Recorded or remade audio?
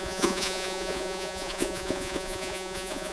remade